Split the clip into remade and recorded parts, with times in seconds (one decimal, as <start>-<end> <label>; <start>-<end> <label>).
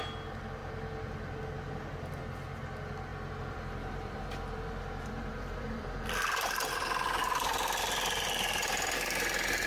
0.0-3.1 recorded; 3.1-7.2 remade; 7.2-9.7 recorded